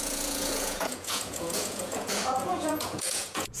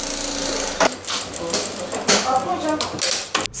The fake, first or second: first